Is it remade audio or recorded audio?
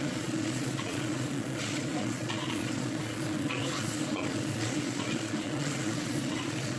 remade